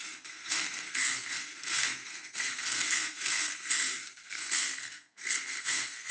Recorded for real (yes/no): no